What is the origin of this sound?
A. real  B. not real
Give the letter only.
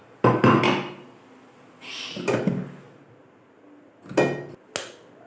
A